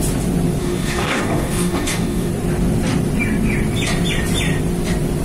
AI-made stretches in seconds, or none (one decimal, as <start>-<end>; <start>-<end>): 0.6-2.3